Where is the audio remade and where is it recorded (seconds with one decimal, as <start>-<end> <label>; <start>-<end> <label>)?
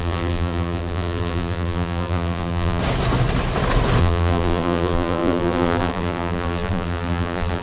0.0-2.8 remade; 2.8-4.0 recorded; 4.0-7.6 remade